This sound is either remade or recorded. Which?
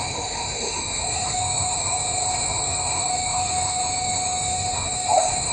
remade